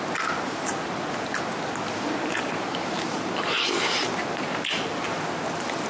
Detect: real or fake real